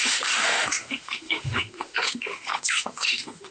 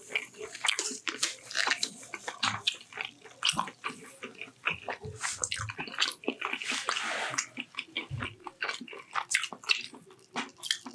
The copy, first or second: first